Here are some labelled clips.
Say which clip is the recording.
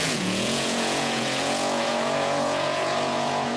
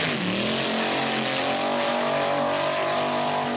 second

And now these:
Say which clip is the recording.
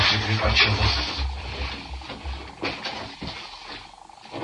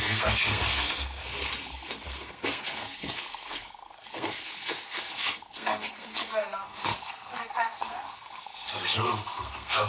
first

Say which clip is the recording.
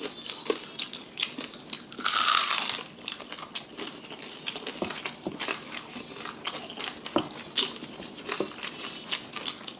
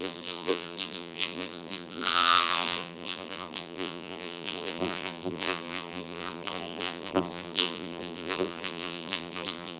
first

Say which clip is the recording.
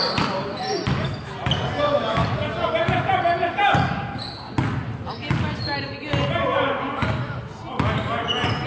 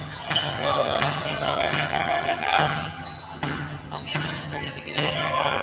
first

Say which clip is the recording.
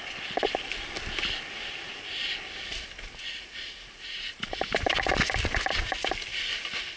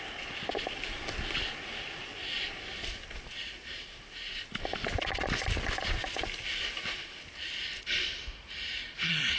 first